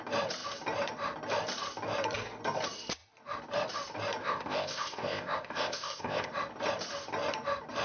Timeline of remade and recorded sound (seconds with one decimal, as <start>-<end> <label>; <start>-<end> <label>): 0.0-4.2 recorded; 4.2-6.3 remade; 6.3-7.8 recorded